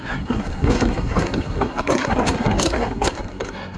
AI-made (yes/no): yes